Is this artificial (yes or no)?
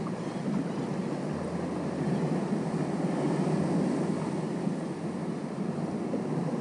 no